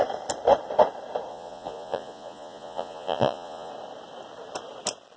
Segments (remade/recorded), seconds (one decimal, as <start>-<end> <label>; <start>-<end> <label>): 0.0-1.3 recorded; 1.3-3.7 remade; 3.7-5.2 recorded